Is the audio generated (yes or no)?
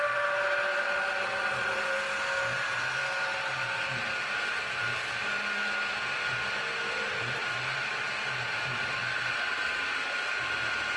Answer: no